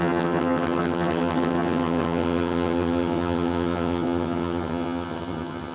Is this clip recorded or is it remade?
remade